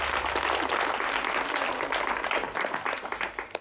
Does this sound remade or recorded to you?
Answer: recorded